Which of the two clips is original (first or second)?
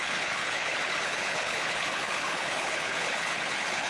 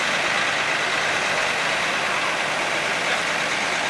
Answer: second